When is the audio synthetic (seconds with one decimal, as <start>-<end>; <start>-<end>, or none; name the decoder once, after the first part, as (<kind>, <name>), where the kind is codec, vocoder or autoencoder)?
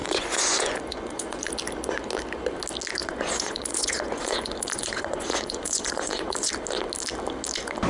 0.0-1.5 (vocoder, Vocos); 3.0-6.5